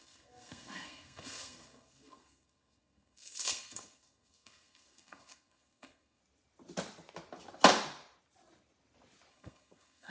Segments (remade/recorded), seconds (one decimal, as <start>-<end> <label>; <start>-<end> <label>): 0.0-6.2 remade; 6.2-9.3 recorded; 9.3-10.1 remade